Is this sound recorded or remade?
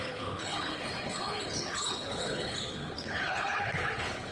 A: remade